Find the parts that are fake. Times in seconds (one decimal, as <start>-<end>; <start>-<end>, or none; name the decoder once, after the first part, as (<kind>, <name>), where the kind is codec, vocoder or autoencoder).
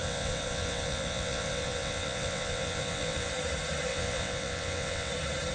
0.0-3.3 (vocoder, WaveNeXt); 3.9-5.1